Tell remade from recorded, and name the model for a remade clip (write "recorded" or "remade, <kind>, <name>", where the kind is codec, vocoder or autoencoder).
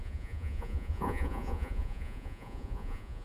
remade, vocoder, Vocos